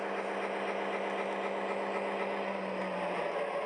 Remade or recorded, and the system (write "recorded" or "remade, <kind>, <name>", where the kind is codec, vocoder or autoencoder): recorded